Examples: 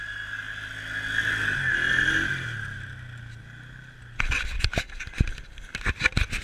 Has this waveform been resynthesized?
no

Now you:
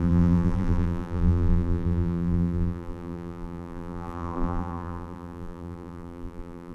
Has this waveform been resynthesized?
yes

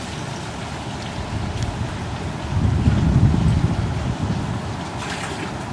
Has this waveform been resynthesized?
no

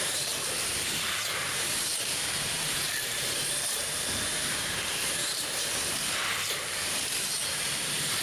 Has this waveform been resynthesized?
yes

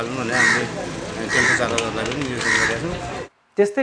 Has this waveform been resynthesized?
no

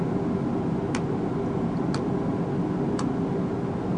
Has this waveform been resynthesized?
no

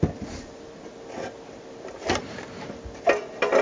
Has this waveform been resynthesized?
no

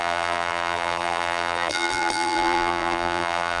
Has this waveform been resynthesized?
yes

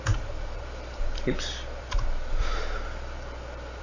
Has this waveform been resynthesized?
yes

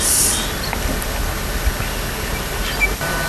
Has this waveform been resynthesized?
no